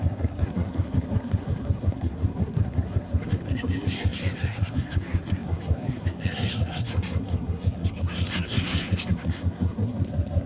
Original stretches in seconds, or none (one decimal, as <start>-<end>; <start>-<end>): none